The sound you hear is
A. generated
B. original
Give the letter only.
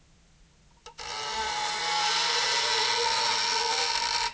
B